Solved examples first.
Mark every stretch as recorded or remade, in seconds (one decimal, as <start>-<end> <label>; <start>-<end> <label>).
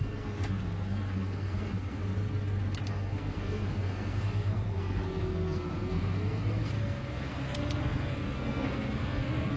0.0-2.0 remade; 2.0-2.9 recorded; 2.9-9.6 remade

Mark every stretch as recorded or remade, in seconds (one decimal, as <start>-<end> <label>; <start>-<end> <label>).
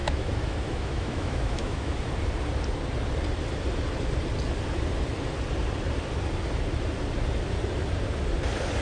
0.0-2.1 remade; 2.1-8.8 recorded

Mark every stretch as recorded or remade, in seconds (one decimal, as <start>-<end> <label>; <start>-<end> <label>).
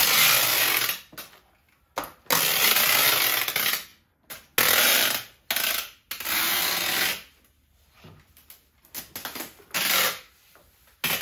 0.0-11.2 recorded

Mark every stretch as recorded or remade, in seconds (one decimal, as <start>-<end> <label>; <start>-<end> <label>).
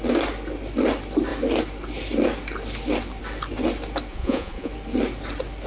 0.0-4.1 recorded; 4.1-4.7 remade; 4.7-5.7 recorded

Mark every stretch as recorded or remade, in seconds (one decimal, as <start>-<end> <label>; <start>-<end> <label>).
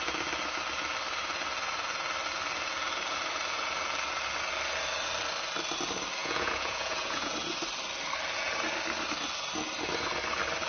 0.0-6.2 recorded; 6.2-7.3 remade; 7.3-10.7 recorded